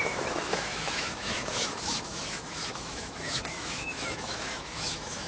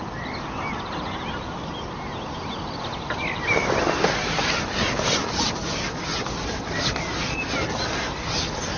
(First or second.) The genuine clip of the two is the second